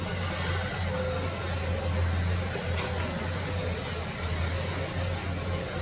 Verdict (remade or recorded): recorded